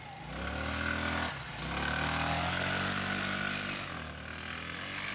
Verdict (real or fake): real